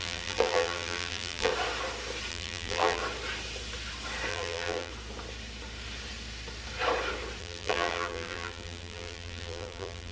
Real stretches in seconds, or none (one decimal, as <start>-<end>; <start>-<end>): 1.5-2.3; 3.0-4.3; 4.9-7.4